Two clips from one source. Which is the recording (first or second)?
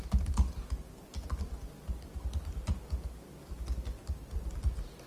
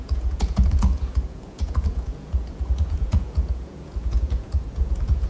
first